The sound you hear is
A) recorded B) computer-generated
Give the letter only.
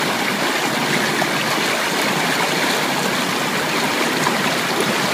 A